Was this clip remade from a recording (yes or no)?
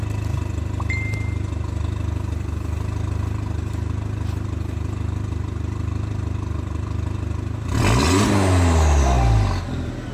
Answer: no